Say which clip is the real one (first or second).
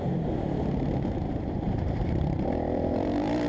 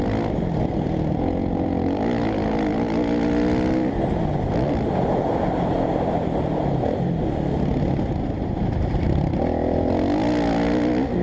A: second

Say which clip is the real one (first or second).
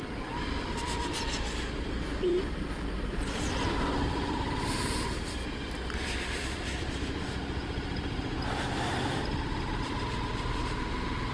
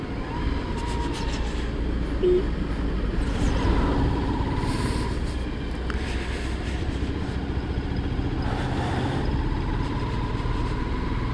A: second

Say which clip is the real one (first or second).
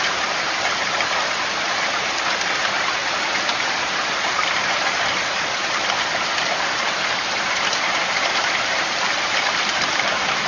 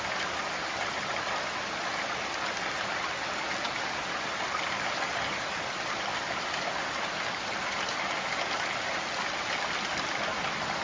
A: second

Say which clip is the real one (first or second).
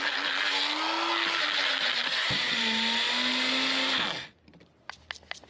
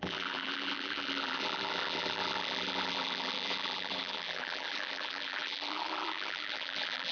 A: first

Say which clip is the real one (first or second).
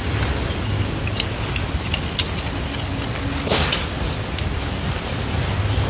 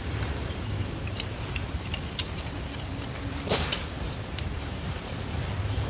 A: first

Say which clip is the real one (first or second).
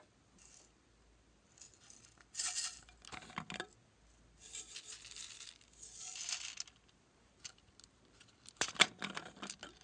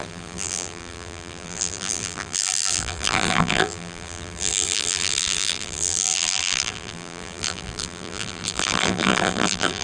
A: first